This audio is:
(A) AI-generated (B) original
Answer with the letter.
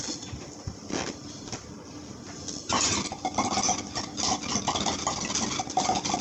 B